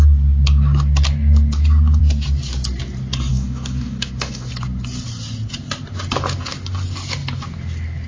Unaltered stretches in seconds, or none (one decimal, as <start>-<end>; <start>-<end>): 0.0-3.3; 4.5-8.1